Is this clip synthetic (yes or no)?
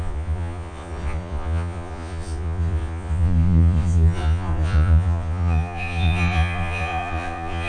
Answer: yes